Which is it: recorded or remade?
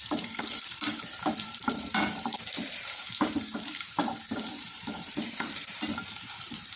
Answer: remade